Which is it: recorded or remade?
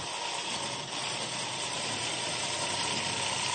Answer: recorded